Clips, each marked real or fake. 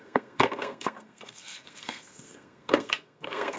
fake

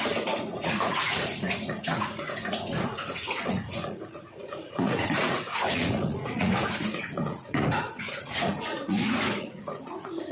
fake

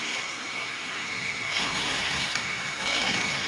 fake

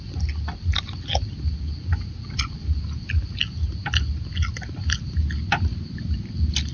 real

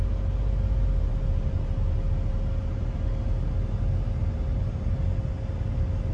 real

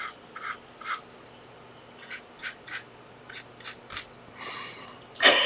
real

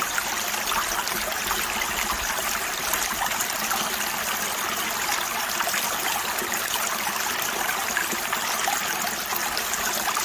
real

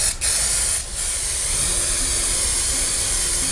real